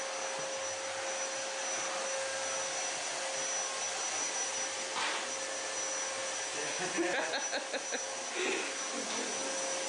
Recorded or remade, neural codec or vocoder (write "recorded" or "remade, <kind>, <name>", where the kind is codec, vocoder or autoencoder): recorded